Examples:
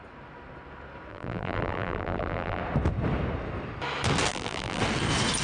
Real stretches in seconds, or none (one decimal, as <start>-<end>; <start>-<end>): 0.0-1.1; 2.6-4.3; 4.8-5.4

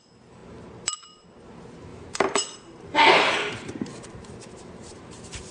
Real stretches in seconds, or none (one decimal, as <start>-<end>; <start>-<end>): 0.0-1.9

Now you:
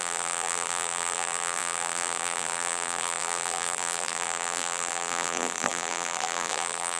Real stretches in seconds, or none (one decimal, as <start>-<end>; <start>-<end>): none

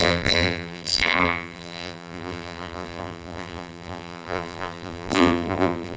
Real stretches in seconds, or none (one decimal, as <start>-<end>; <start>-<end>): none